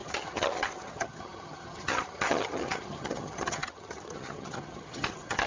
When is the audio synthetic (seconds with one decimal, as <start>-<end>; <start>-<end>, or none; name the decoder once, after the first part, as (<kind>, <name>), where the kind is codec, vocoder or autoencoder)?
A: 0.0-5.5 (vocoder, HiFi-GAN)